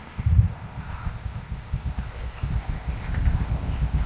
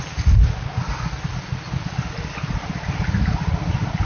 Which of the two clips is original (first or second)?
second